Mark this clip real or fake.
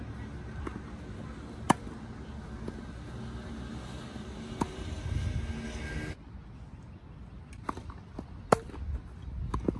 real